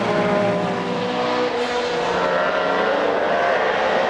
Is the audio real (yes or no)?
yes